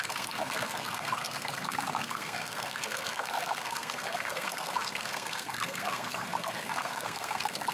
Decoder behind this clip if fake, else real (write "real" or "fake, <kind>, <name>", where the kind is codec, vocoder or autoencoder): fake, codec, SNAC